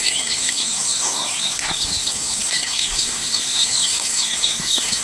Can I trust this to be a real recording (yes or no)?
no